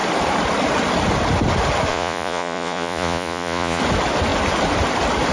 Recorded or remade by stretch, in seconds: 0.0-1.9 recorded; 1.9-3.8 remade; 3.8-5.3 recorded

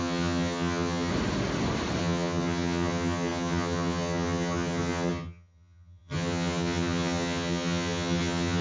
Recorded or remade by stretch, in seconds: 0.0-1.1 remade; 1.1-2.0 recorded; 2.0-8.6 remade

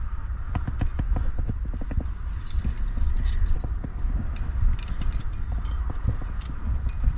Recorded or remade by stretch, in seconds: 0.0-7.2 recorded